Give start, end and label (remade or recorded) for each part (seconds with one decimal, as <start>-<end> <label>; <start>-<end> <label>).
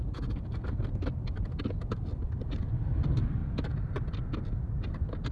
0.0-0.8 remade; 0.8-1.6 recorded; 1.6-3.4 remade; 3.4-5.3 recorded